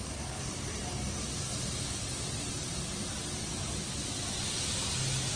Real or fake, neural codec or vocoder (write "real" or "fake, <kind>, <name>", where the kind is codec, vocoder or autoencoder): real